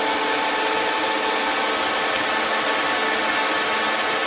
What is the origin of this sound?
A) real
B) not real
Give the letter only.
A